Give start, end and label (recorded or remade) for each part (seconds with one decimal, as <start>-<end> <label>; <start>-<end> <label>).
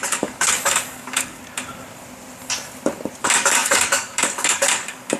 0.0-1.4 remade; 1.4-3.2 recorded; 3.2-5.2 remade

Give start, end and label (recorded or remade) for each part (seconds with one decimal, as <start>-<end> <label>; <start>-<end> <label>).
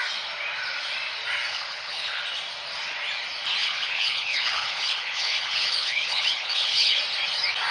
0.0-1.5 recorded; 1.5-2.2 remade; 2.2-3.6 recorded; 3.6-7.0 remade; 7.0-7.7 recorded